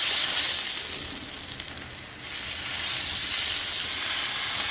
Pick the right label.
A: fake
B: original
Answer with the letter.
B